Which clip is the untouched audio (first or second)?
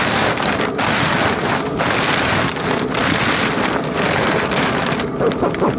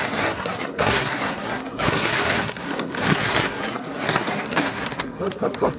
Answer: first